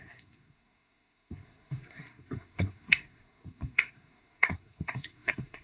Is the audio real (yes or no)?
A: no